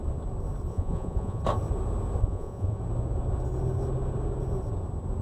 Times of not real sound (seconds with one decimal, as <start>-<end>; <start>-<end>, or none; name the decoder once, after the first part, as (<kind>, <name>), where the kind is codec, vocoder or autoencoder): 0.7-1.4 (vocoder, Vocos); 2.2-2.8

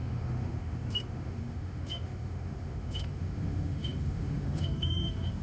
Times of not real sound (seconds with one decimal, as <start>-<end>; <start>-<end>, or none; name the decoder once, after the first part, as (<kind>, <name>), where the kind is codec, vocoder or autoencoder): 0.0-5.4 (autoencoder, DAC-VAE)

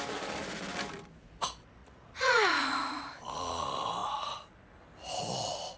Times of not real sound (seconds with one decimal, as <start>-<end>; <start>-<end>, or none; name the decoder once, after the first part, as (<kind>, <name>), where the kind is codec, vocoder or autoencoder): 1.8-3.0 (vocoder, Vocos)

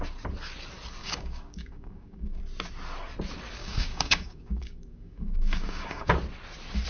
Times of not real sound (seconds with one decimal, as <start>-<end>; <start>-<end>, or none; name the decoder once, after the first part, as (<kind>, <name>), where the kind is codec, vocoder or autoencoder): 1.0-2.4 (codec, DAC); 3.6-6.1

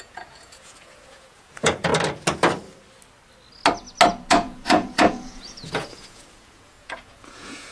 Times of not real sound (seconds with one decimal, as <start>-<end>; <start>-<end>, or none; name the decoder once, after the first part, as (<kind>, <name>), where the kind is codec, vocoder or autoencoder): 0.0-1.9 (vocoder, Vocos); 4.3-7.7